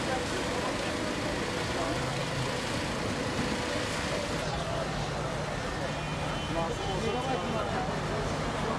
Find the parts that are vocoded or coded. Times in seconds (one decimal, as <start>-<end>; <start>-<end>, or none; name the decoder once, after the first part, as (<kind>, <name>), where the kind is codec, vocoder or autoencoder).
none